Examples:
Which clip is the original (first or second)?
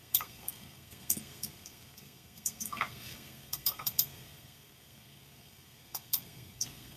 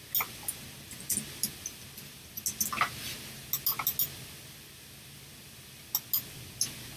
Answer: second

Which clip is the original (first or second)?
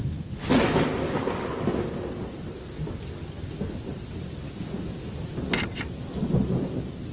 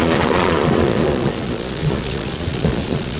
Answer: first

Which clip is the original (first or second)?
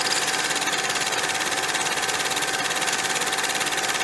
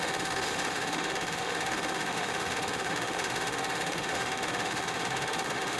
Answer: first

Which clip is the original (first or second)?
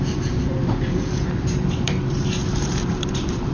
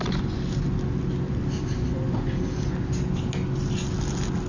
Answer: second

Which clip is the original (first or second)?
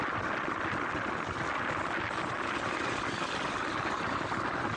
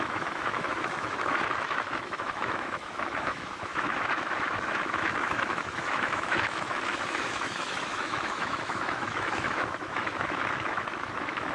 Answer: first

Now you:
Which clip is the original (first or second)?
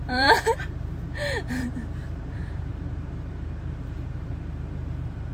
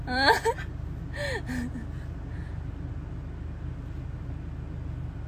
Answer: second